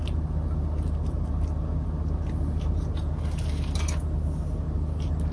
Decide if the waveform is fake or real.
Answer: real